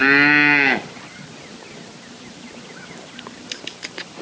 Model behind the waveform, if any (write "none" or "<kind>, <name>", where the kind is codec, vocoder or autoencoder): none